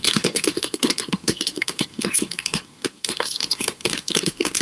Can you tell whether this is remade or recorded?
remade